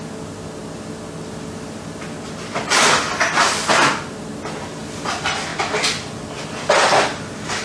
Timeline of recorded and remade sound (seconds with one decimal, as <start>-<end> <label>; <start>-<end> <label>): 0.0-7.6 recorded